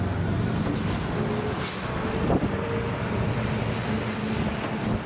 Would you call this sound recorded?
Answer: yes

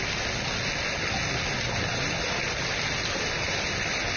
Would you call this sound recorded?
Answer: yes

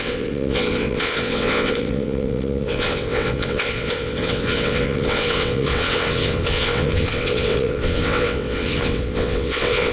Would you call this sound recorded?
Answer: no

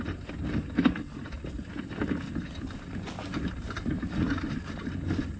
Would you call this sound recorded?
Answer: yes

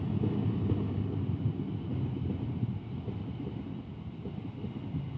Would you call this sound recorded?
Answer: yes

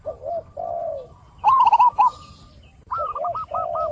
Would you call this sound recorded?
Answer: yes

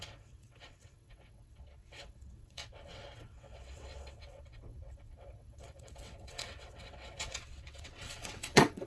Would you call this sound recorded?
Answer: no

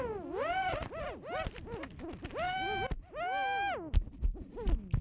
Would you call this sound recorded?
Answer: yes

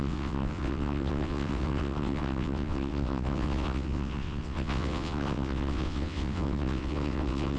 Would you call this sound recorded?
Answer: no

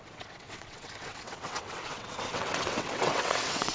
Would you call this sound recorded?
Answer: no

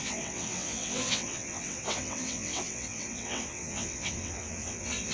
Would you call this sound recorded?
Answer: no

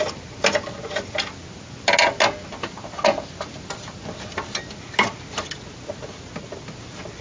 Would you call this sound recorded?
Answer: yes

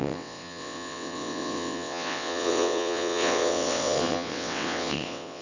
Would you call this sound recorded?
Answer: no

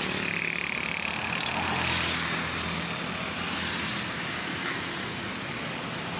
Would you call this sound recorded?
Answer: yes